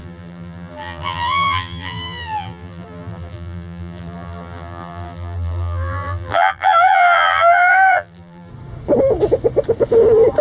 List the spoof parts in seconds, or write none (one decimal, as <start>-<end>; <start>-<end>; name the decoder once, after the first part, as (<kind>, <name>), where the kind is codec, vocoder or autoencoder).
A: 0.0-8.5 (vocoder, BigVGAN v2)